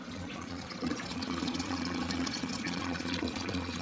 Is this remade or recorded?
remade